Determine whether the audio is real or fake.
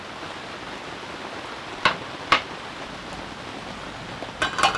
real